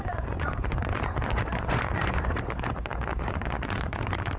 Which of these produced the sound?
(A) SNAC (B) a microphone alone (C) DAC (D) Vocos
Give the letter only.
D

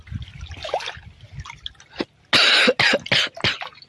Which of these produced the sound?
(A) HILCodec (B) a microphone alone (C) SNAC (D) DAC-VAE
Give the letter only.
B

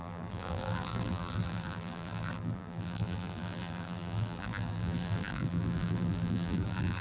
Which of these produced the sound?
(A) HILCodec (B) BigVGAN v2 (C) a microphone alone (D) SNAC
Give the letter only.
B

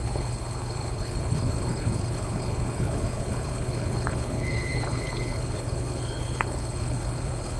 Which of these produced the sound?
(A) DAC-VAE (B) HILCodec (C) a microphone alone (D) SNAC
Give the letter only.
B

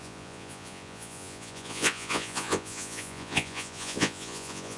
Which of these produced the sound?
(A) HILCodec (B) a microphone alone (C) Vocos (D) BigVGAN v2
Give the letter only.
C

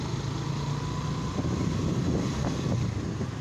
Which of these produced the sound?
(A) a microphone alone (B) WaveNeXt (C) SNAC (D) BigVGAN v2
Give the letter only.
A